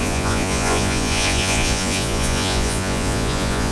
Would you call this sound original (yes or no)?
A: no